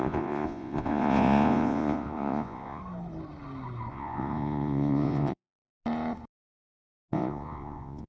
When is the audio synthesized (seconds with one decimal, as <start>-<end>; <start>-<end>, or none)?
0.0-2.8; 3.9-5.7; 7.1-8.1